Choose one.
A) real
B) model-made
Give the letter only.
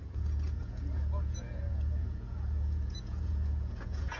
B